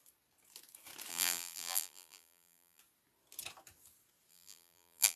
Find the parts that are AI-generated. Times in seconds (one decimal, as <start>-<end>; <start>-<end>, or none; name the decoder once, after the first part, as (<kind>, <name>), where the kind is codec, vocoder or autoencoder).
1.1-2.8 (vocoder, BigVGAN v2); 4.3-5.2

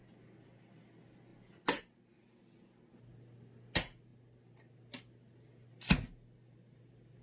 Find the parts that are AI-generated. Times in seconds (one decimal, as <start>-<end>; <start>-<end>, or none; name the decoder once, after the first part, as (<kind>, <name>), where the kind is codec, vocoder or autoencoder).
none

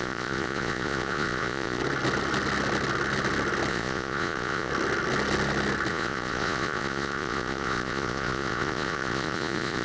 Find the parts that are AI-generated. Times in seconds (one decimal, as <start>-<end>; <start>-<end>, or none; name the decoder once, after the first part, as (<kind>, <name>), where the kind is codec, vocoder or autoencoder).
0.0-1.8 (vocoder, Vocos); 3.7-4.7; 5.9-9.8

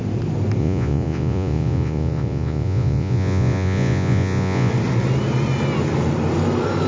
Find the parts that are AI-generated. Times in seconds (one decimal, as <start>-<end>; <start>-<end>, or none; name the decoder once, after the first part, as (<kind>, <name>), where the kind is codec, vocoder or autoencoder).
0.6-4.7 (vocoder, Vocos)

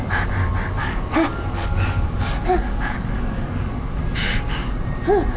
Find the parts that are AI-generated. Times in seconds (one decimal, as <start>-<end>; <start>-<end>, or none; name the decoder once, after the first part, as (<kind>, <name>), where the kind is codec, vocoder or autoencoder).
0.8-4.0 (codec, DAC)